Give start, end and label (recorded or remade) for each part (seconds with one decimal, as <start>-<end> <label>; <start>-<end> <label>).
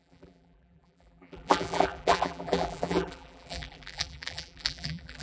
0.0-5.2 remade